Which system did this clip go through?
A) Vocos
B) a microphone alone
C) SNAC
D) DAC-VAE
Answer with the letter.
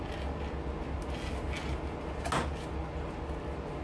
B